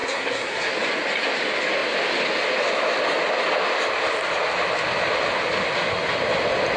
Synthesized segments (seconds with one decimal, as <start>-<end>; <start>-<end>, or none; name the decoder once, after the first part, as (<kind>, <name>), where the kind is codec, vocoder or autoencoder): 0.0-0.7 (codec, SNAC)